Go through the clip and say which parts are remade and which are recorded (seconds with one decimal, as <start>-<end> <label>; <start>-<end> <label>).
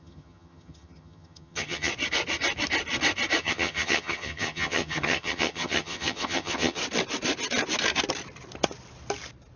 0.0-1.9 remade; 1.9-3.4 recorded; 3.4-6.8 remade; 6.8-9.6 recorded